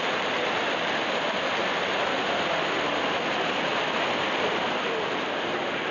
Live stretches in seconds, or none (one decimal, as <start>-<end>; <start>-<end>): 1.6-5.1